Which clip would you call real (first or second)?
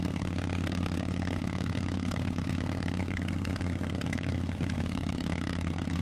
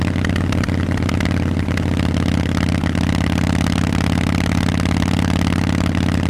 second